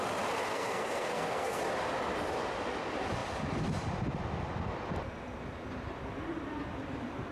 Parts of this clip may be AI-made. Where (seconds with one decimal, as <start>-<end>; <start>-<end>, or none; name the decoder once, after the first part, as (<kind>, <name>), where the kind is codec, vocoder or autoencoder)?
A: 0.5-1.6 (codec, SNAC)